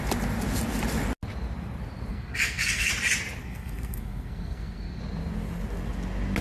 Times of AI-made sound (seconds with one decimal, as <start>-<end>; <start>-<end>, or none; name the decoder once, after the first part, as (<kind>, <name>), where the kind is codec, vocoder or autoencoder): 2.1-2.9 (codec, SNAC); 3.4-5.0